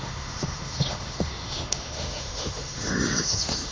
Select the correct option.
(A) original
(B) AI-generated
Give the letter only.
B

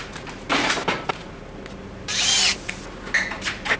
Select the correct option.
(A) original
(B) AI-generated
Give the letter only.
A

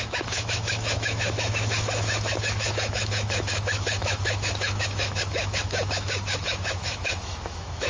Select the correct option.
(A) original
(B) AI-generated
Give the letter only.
B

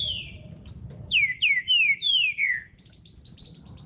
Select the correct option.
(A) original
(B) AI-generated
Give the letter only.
B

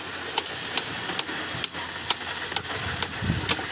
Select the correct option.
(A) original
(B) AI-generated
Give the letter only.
A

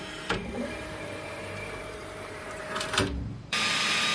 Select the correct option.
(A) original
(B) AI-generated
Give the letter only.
B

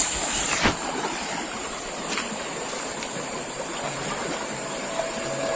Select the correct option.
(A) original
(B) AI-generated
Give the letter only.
B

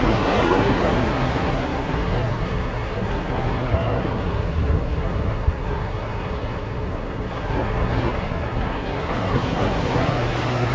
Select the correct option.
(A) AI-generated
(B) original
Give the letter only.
A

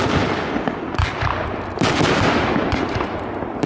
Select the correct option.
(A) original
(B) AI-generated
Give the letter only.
A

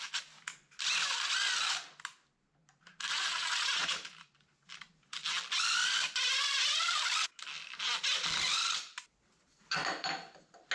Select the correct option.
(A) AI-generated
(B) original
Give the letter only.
B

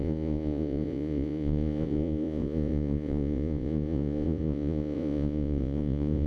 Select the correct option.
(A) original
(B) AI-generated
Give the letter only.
B